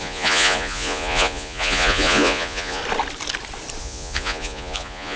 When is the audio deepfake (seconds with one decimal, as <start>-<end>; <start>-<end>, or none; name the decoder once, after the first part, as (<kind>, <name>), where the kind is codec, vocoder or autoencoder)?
0.0-2.8 (vocoder, Vocos); 3.8-5.2